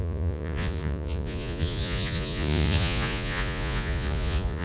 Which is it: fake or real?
fake